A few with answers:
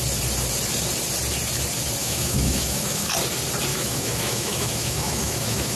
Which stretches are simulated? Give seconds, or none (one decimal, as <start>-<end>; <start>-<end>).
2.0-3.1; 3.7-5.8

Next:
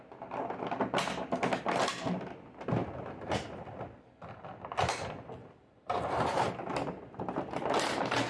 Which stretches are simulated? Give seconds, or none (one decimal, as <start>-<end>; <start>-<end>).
2.8-3.3; 5.4-6.0

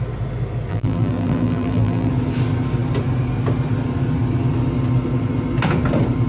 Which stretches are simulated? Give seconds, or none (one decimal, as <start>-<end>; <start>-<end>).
0.7-2.1